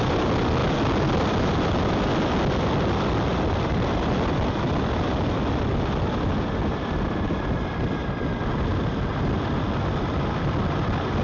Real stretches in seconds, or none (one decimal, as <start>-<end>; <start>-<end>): 0.0-11.2